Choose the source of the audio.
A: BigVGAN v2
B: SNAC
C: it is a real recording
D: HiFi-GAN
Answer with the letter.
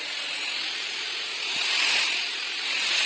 A